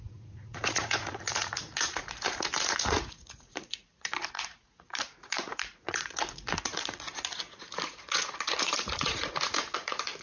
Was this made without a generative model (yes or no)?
no